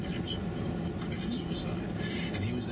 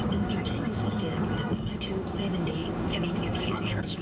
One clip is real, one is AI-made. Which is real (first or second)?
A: first